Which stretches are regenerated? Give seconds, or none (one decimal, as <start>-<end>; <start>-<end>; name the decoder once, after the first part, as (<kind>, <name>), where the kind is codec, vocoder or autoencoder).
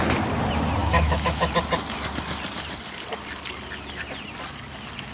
0.8-1.5 (autoencoder, DAC-VAE)